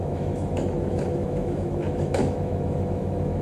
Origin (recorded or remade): remade